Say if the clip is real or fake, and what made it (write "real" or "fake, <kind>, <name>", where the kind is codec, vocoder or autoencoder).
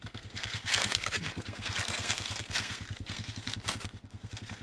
fake, codec, SNAC